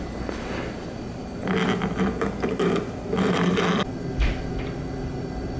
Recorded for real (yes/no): yes